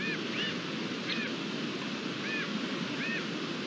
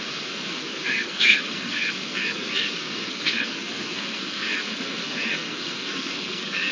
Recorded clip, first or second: first